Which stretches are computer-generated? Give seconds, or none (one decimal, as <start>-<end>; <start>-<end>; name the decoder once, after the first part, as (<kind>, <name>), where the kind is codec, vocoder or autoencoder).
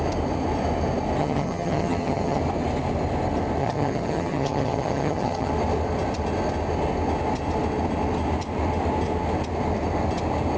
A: 1.2-2.4 (vocoder, HiFi-GAN); 3.6-5.5